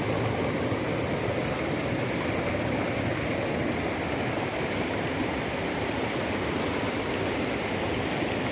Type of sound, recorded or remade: recorded